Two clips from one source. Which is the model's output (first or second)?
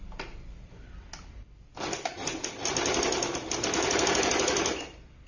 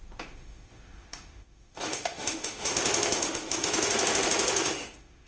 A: second